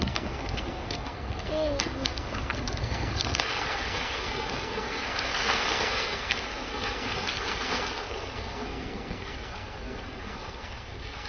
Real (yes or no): no